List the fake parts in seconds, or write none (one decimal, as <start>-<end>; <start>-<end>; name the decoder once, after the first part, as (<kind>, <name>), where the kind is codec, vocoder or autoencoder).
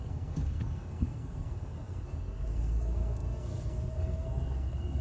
0.0-5.0 (codec, SNAC)